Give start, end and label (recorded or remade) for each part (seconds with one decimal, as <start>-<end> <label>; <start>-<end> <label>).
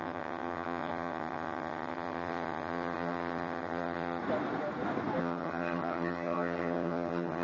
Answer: 0.0-4.2 remade; 4.2-5.2 recorded; 5.2-7.4 remade